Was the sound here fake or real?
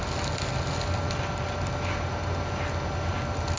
real